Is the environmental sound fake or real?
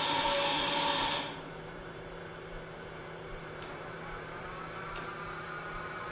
fake